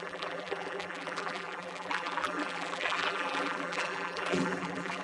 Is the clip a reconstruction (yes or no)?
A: yes